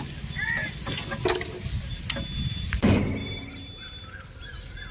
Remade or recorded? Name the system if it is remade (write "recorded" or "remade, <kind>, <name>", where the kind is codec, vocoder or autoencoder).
recorded